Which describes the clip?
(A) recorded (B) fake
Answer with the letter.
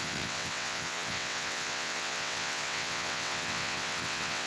B